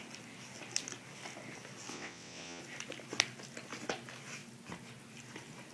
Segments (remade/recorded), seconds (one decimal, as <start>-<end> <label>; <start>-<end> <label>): 0.0-1.9 recorded; 1.9-2.6 remade; 2.6-5.7 recorded